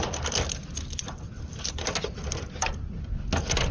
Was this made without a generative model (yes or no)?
yes